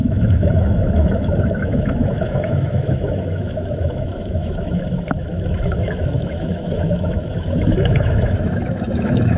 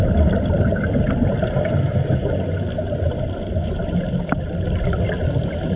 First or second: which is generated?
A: first